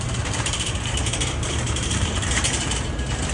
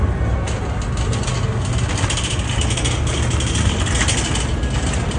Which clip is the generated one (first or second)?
first